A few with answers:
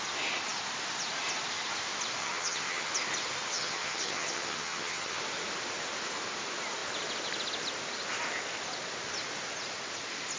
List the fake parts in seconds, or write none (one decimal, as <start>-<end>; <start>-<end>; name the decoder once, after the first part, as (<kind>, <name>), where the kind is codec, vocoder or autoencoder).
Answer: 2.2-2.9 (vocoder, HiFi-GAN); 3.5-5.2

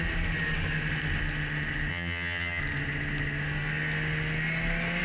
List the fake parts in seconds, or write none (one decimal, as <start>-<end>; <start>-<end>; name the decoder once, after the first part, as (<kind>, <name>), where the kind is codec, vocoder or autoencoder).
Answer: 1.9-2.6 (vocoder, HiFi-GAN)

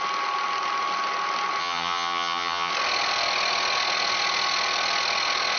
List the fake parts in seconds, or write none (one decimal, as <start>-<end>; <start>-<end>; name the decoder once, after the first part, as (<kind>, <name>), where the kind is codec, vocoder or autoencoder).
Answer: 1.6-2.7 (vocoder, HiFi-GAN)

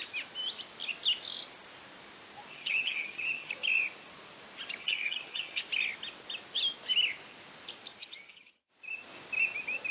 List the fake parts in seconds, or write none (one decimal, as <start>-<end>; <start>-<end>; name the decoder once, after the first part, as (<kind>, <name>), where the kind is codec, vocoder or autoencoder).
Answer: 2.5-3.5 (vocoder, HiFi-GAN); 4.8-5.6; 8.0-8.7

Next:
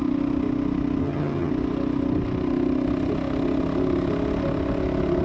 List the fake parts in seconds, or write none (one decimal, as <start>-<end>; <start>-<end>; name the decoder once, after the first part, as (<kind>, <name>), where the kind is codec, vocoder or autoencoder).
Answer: 1.0-1.5 (vocoder, HiFi-GAN)